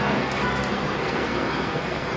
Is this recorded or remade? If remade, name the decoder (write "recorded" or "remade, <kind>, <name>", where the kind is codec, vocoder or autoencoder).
remade, codec, SNAC